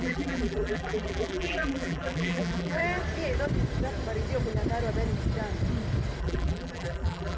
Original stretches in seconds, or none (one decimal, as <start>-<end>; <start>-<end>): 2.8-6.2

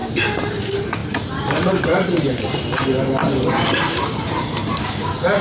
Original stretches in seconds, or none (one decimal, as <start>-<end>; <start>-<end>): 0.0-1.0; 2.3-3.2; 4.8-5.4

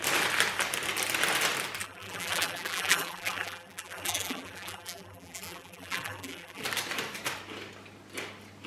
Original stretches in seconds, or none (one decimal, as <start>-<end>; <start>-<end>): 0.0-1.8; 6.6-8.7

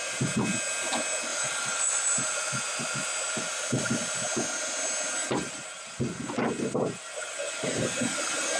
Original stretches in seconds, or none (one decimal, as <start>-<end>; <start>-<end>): 0.0-1.3; 2.0-8.6